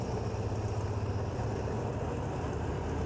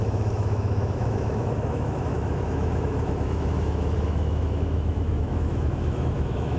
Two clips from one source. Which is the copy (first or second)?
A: second